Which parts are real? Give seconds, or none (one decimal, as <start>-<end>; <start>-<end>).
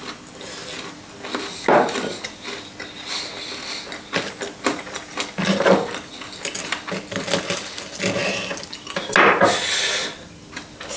0.0-11.0